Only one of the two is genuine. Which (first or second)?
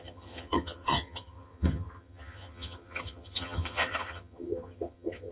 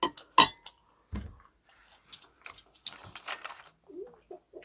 second